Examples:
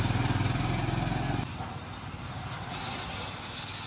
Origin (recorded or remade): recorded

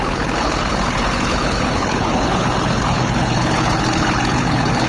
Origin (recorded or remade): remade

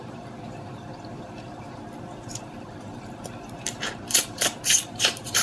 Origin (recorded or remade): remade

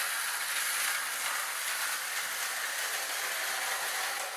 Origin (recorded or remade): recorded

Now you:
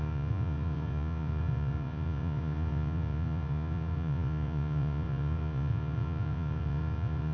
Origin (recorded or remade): remade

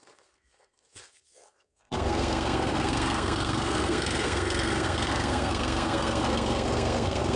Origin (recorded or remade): remade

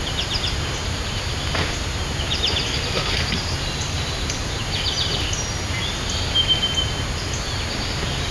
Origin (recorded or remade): recorded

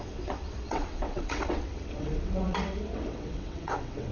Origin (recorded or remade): remade